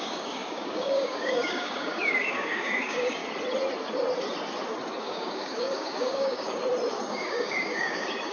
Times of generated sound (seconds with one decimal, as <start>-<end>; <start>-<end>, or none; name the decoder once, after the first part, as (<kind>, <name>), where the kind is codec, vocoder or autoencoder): 0.0-3.2 (codec, DAC); 5.0-6.6; 7.1-8.3